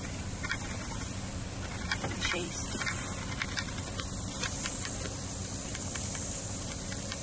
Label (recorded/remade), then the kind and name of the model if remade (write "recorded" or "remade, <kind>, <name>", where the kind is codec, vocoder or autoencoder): remade, vocoder, BigVGAN v2